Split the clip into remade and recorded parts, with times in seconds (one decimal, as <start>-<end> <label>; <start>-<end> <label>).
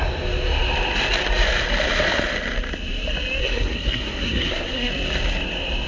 0.0-3.4 recorded; 3.4-4.9 remade; 4.9-5.9 recorded